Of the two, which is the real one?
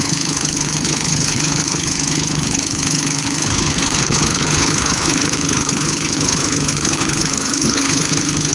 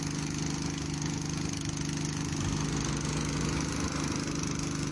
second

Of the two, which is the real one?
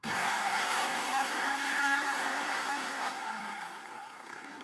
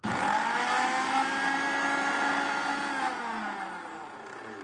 second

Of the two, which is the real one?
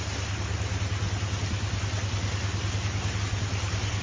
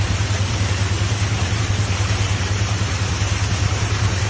first